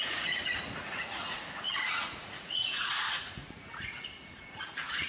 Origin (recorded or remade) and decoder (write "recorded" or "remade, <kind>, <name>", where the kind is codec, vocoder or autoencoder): remade, vocoder, Vocos